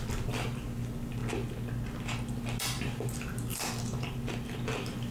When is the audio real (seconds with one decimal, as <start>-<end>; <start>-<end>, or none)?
0.0-5.1